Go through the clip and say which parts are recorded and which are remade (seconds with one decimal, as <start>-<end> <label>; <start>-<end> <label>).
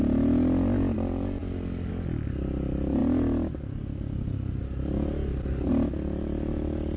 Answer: 0.0-1.4 recorded; 1.4-1.9 remade; 1.9-7.0 recorded